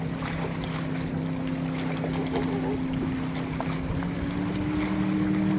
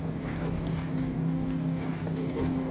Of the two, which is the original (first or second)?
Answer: first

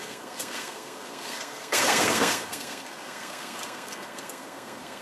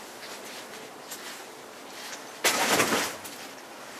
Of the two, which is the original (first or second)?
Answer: second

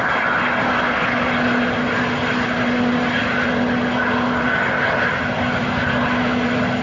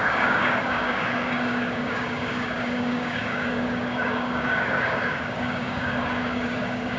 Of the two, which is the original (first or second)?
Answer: first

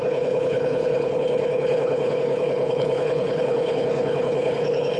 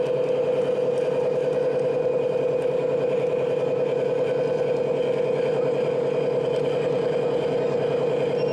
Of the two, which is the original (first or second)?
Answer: second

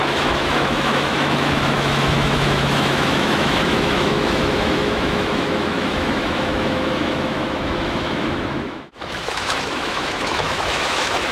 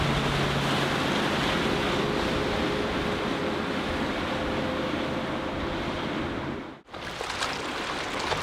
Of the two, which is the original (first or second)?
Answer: second